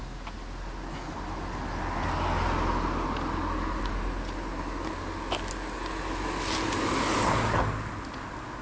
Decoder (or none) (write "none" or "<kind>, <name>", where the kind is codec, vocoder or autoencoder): none